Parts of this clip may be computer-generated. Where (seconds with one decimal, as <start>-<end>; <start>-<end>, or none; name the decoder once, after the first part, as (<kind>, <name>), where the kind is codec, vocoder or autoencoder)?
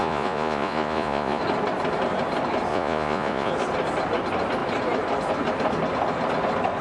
0.0-1.4 (vocoder, Vocos); 2.7-3.5